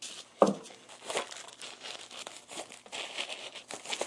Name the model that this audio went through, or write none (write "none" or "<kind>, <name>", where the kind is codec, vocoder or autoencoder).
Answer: none